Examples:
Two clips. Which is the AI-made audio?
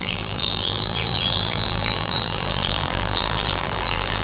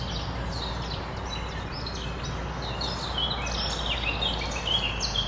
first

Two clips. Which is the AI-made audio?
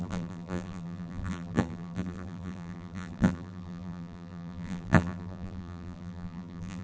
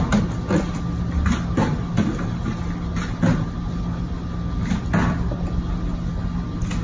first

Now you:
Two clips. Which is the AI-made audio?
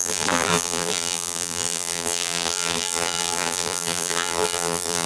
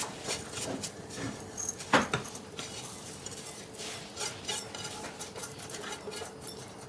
first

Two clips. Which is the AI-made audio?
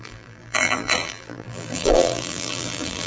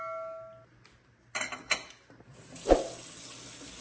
first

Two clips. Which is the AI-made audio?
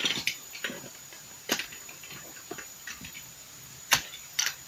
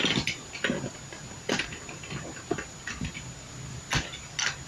first